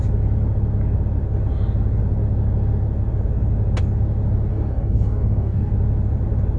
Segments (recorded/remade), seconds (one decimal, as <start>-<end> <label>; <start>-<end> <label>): 0.0-4.5 recorded; 4.5-5.7 remade; 5.7-6.6 recorded